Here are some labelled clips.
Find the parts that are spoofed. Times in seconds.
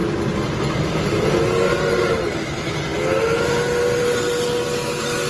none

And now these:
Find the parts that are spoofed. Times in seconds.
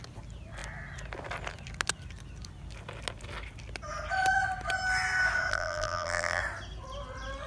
5.5-6.4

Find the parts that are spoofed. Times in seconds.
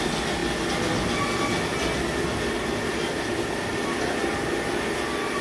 none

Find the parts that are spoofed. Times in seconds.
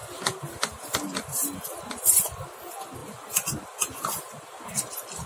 0.0-1.8; 3.0-4.6